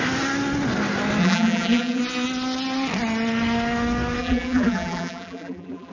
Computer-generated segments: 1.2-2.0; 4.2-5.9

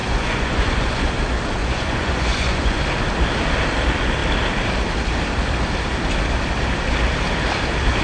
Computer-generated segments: 0.0-1.1; 1.6-2.8

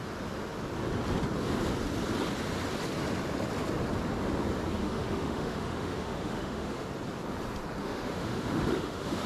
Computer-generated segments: 4.8-6.9; 7.8-9.3

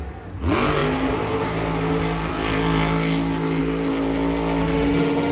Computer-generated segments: 4.6-5.3

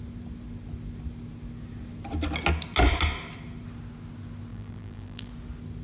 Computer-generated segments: 4.5-5.3